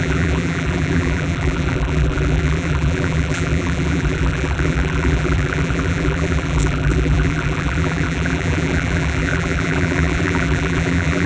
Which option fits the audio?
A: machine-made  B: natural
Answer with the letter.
A